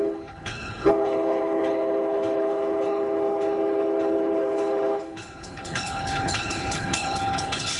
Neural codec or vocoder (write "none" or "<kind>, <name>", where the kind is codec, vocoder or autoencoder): codec, HILCodec